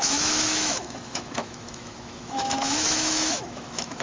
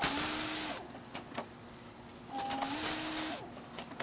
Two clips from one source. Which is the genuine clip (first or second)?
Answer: second